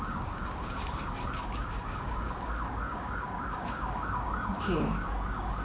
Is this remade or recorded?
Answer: remade